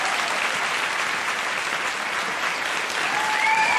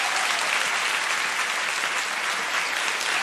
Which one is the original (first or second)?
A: second